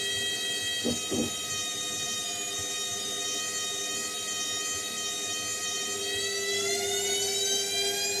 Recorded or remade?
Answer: recorded